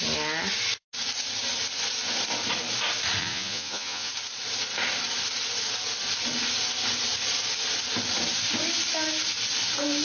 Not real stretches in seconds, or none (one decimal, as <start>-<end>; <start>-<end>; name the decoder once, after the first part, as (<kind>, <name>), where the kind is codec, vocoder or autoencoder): 3.2-4.1 (vocoder, Vocos)